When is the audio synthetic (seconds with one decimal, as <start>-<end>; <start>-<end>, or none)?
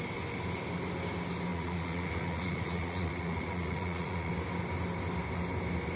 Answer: 1.5-4.3